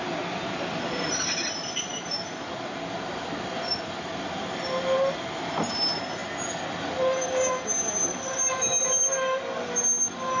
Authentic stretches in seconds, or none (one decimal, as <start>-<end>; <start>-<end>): 0.0-10.4